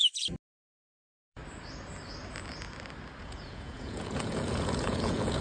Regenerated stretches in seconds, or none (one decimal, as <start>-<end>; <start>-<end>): 0.7-1.4; 3.2-5.4